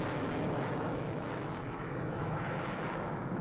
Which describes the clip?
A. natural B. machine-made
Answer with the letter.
B